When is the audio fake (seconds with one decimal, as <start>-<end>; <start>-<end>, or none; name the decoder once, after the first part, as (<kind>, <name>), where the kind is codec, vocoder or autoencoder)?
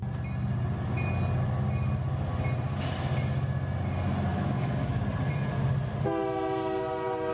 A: 4.3-5.0 (autoencoder, DAC-VAE)